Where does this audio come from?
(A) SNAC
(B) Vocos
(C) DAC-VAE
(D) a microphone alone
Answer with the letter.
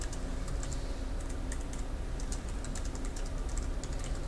D